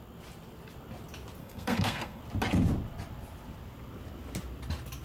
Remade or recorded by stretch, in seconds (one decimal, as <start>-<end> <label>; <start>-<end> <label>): 0.0-1.4 recorded; 1.4-2.2 remade; 2.2-5.0 recorded